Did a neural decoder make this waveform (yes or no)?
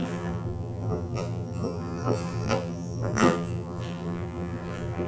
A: yes